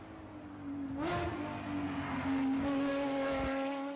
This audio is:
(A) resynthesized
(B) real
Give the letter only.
B